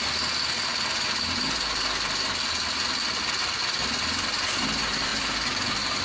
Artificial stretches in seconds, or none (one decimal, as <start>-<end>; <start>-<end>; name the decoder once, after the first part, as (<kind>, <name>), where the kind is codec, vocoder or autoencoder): none